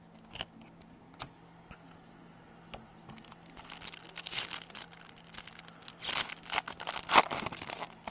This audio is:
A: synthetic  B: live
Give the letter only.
B